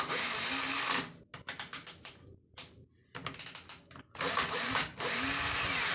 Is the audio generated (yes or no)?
no